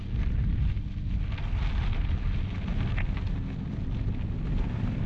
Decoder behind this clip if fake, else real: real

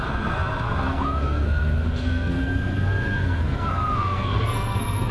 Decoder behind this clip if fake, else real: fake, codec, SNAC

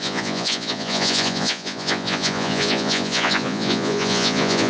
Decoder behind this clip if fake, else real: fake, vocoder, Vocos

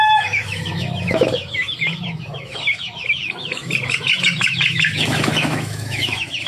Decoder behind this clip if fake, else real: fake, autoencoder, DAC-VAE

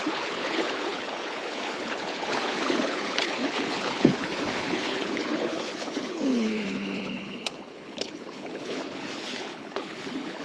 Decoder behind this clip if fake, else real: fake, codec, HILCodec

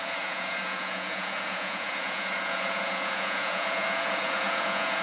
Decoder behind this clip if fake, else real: fake, vocoder, Vocos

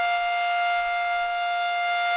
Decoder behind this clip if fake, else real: real